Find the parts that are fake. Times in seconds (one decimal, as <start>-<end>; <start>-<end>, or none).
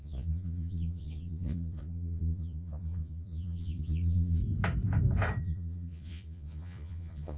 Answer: 0.0-4.4; 5.4-7.4